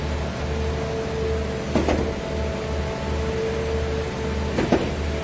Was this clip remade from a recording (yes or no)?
no